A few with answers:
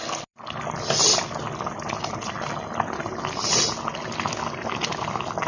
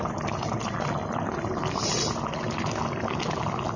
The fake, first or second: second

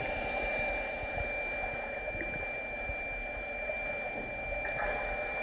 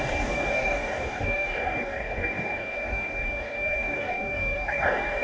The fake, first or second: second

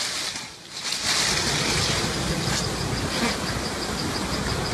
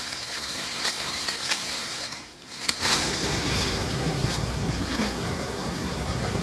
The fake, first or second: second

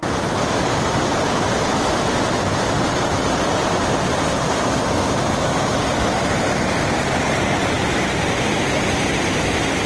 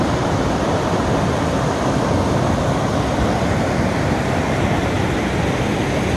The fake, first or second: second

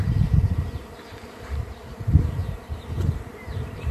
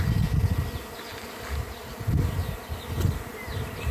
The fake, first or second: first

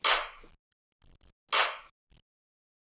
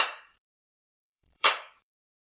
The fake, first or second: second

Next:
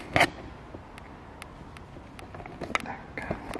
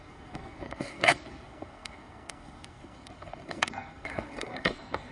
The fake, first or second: second